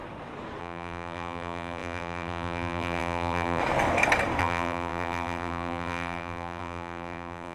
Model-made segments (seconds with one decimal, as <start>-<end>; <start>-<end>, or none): 0.6-3.6; 4.4-7.5

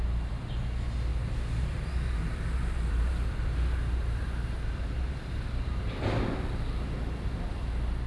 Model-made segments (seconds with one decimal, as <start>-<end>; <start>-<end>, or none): 1.1-6.0

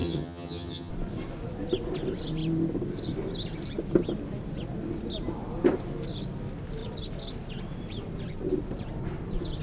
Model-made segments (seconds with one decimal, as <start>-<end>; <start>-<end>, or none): 0.0-0.9

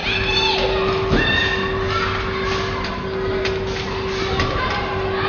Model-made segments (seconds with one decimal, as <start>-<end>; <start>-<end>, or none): none

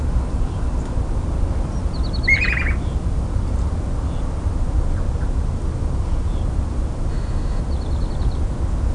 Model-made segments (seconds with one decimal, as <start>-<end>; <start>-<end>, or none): 7.1-7.6

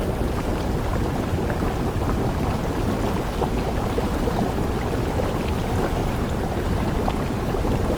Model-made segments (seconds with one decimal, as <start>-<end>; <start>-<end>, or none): none